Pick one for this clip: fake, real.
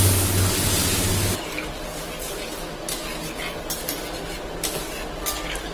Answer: real